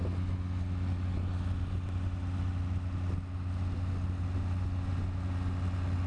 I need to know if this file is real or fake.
real